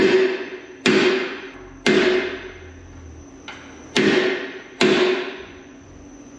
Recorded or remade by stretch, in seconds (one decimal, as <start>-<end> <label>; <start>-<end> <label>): 0.0-0.5 remade; 0.5-1.1 recorded; 1.1-1.5 remade; 1.5-5.3 recorded; 5.3-6.4 remade